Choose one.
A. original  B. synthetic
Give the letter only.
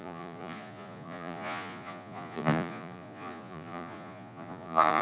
B